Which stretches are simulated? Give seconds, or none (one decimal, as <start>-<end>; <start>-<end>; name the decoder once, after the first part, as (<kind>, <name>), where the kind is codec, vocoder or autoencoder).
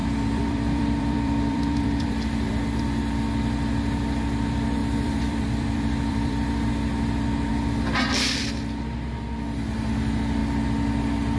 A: 0.0-2.6 (vocoder, BigVGAN v2); 4.8-6.7